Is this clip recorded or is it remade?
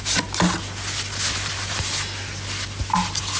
recorded